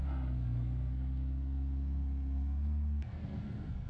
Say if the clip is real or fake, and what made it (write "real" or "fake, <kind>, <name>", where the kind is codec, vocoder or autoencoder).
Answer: fake, codec, SNAC